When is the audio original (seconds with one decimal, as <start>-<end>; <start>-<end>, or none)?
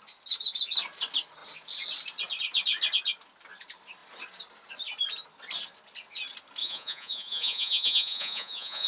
0.0-6.6